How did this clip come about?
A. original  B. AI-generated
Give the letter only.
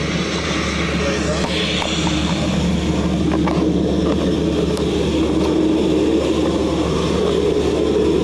A